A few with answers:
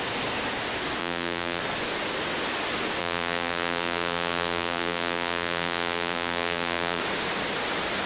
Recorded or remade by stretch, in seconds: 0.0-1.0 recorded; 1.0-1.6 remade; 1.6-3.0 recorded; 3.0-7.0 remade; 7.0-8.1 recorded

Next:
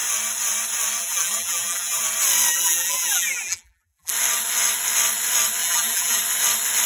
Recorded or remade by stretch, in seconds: 0.0-1.0 recorded; 1.0-2.0 remade; 2.0-2.5 recorded; 2.5-4.1 remade; 4.1-5.6 recorded; 5.6-6.2 remade; 6.2-6.9 recorded

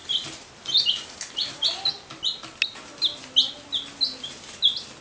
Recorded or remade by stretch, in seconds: 0.0-5.0 recorded